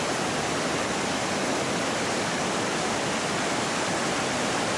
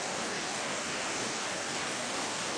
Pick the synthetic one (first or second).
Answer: second